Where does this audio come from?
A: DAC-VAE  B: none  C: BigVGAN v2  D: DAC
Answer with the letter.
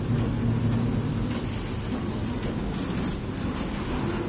B